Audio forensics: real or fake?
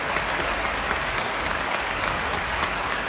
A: fake